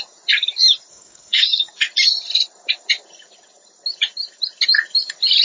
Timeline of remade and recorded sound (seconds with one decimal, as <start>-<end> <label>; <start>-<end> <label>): 0.0-0.9 recorded; 0.9-1.7 remade; 1.7-5.4 recorded